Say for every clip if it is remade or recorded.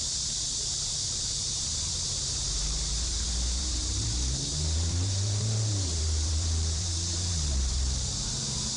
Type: remade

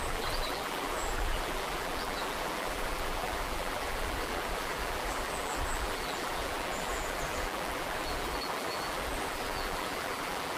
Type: remade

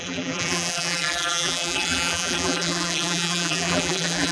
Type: remade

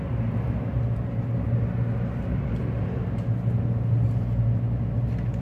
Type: remade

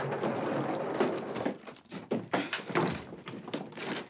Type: remade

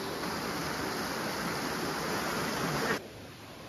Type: recorded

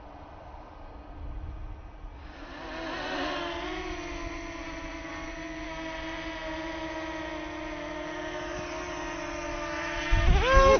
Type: recorded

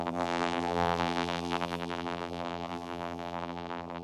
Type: remade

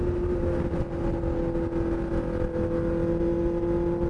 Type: recorded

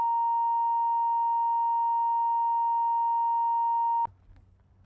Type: recorded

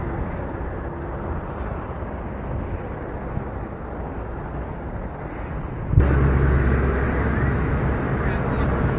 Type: recorded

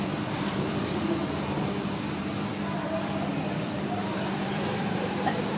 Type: remade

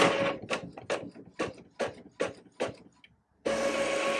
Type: recorded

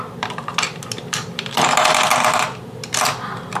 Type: recorded